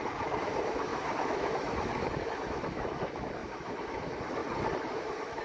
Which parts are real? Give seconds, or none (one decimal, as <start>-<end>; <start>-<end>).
4.4-4.9